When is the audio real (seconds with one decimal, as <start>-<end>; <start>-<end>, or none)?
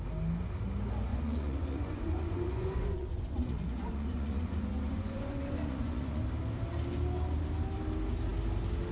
0.0-1.1; 6.2-8.9